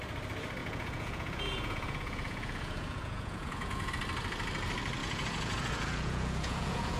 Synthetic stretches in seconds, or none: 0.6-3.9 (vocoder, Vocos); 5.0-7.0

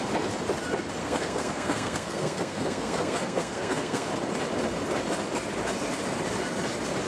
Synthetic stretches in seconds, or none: 1.0-4.1 (codec, SNAC)